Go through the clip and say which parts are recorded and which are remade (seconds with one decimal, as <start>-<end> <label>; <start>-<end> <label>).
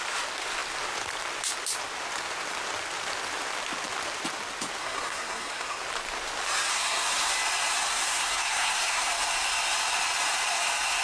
0.0-4.8 recorded; 4.8-5.8 remade; 5.8-6.7 recorded; 6.7-7.3 remade; 7.3-7.9 recorded; 7.9-9.1 remade; 9.1-11.0 recorded